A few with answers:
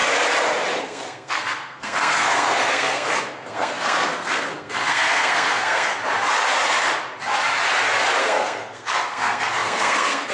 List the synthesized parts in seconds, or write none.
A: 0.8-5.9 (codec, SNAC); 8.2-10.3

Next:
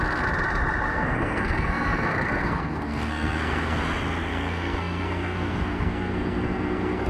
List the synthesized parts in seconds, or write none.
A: 0.9-3.8 (codec, SNAC); 4.3-7.1

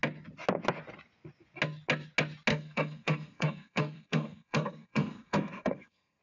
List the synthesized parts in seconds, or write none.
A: 2.5-6.2 (codec, SNAC)

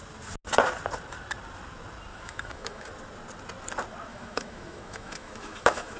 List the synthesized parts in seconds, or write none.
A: 2.1-2.9 (autoencoder, DAC-VAE); 4.1-6.0

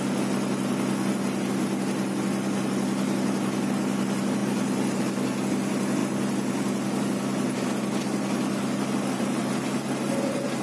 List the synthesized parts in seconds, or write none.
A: none

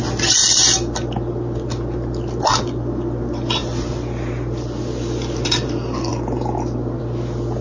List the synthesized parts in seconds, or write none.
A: none